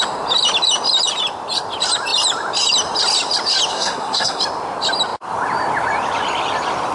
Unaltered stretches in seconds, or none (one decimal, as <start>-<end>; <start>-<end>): 0.0-3.7; 4.4-6.9